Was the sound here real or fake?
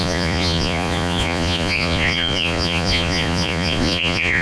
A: fake